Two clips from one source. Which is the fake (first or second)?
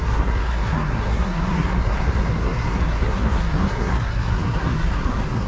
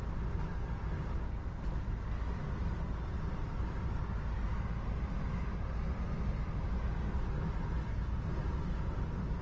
first